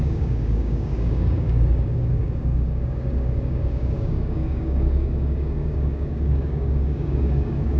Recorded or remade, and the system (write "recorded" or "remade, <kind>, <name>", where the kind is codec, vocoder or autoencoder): remade, codec, DAC